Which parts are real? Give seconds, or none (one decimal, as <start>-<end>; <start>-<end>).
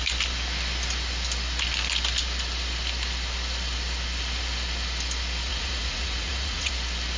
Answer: 0.0-5.5; 6.7-7.2